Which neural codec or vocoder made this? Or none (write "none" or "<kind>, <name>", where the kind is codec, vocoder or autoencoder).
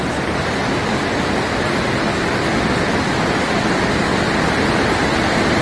none